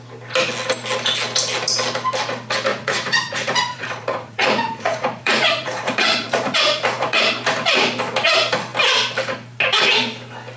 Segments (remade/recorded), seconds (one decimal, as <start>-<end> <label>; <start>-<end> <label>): 0.0-2.7 recorded; 2.7-7.3 remade; 7.3-10.6 recorded